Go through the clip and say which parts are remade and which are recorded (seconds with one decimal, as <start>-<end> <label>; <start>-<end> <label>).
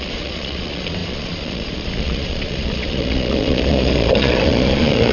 0.0-5.1 remade